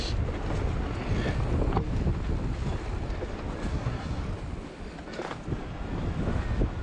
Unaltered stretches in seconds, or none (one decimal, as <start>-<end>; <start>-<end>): 0.0-3.7; 4.2-6.8